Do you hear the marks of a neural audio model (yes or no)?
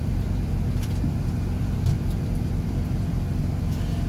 yes